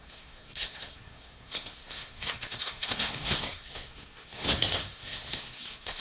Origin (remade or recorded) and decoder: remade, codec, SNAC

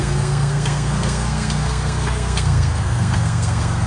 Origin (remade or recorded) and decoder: remade, codec, SNAC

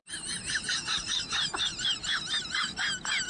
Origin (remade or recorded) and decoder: recorded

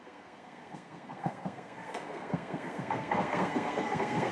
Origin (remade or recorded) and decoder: remade, codec, SNAC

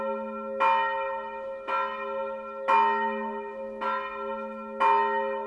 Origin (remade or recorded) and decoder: recorded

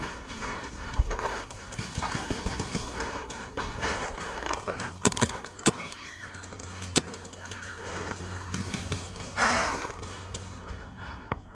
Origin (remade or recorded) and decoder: remade, codec, SNAC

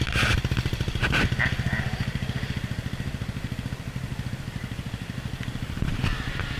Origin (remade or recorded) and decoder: recorded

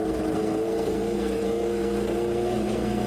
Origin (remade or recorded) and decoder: remade, codec, SNAC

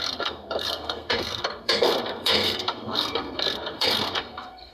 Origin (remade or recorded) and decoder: remade, codec, SNAC